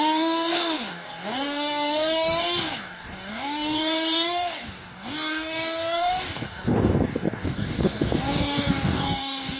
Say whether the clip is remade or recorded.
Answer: remade